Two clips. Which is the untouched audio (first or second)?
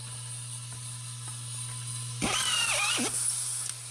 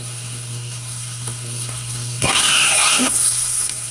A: first